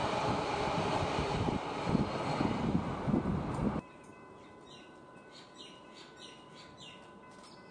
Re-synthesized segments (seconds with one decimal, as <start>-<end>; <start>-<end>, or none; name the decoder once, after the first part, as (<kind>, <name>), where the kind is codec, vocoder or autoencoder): 3.6-4.5 (vocoder, BigVGAN v2)